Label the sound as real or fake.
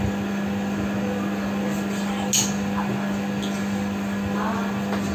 real